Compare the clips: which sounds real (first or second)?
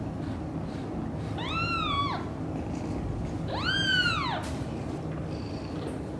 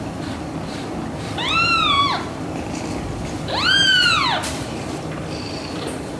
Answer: first